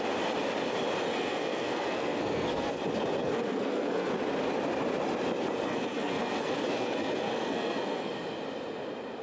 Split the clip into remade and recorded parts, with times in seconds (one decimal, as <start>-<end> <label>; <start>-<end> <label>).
0.0-1.1 recorded; 1.1-2.7 remade; 2.7-3.2 recorded; 3.2-4.1 remade; 4.1-5.7 recorded; 5.7-8.1 remade; 8.1-9.2 recorded